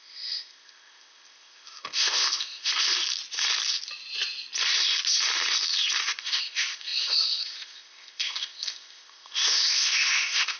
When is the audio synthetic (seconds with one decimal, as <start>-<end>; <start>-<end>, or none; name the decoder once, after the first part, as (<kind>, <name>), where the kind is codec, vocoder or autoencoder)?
0.0-3.0 (codec, ZipCodec); 6.2-10.6